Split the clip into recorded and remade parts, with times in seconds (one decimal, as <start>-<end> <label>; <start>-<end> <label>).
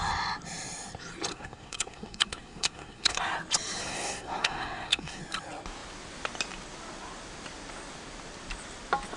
0.0-1.3 recorded; 1.3-3.2 remade; 3.2-3.8 recorded; 3.8-5.2 remade; 5.2-9.2 recorded